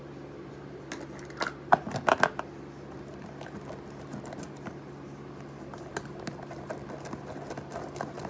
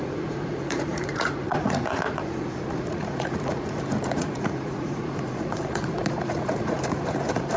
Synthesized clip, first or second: second